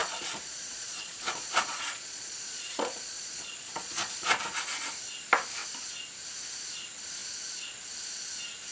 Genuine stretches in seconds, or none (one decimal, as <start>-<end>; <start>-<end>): 4.3-8.7